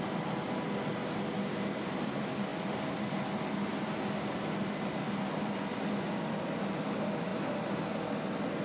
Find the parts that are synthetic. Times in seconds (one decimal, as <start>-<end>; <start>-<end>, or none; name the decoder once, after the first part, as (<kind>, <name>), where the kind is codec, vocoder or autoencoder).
none

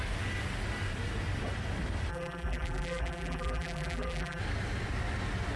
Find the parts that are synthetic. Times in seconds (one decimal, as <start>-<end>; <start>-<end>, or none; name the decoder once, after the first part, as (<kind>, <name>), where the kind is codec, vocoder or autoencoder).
2.1-4.4 (vocoder, BigVGAN v2)

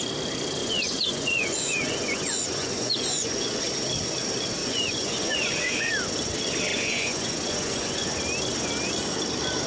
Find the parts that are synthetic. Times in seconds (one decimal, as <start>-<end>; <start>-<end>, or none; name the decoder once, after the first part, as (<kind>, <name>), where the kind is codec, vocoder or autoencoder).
0.6-3.6 (vocoder, Vocos); 4.6-5.9; 6.7-8.2

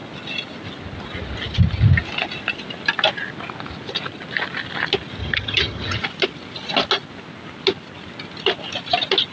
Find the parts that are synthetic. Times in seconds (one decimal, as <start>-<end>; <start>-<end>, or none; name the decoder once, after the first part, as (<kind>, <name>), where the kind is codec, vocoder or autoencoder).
5.2-6.0 (vocoder, HiFi-GAN)

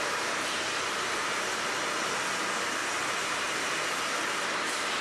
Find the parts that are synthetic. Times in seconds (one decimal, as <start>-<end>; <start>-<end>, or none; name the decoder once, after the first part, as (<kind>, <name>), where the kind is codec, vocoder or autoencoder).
2.8-4.2 (vocoder, BigVGAN v2)

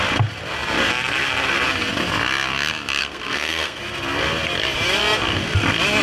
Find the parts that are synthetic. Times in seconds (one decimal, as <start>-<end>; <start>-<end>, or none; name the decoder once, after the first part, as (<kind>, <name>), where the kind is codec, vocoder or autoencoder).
3.0-3.8 (codec, SNAC)